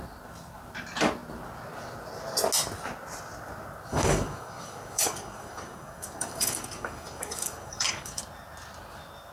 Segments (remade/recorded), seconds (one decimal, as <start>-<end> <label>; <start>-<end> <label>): 0.0-3.9 recorded; 3.9-8.2 remade; 8.2-9.3 recorded